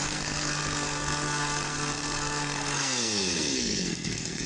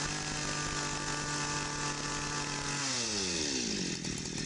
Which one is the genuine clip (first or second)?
second